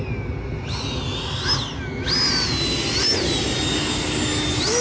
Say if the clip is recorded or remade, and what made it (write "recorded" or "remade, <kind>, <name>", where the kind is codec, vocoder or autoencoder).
recorded